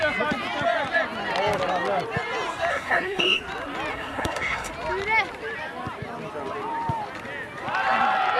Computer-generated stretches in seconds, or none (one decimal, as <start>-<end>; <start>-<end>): 2.7-3.4; 3.9-4.7